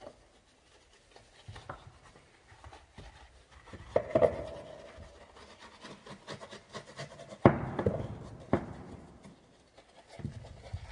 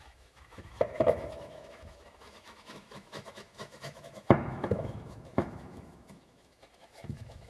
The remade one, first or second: second